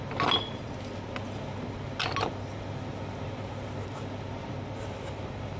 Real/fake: real